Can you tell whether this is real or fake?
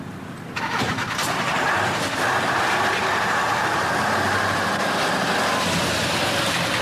real